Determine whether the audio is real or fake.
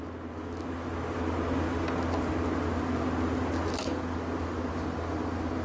real